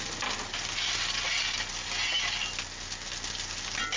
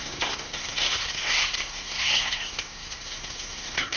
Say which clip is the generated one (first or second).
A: second